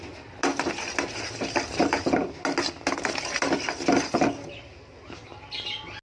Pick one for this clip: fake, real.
real